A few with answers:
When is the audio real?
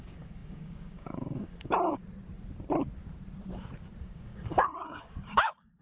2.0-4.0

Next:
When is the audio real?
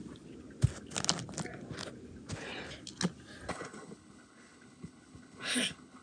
0.0-3.5